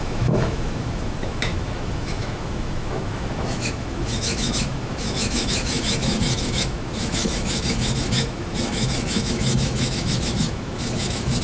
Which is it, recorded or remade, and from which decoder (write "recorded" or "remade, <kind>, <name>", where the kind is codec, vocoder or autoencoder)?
remade, autoencoder, DAC-VAE